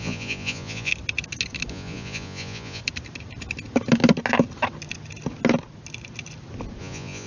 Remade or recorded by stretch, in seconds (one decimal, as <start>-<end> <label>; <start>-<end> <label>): 0.0-0.9 remade; 0.9-1.7 recorded; 1.7-2.8 remade; 2.8-6.8 recorded; 6.8-7.3 remade